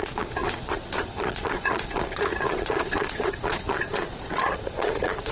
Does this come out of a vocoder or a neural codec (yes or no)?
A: yes